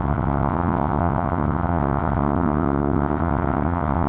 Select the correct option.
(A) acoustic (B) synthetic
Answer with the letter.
B